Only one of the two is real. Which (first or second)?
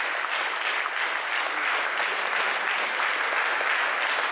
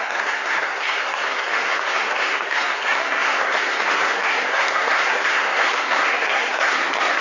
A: first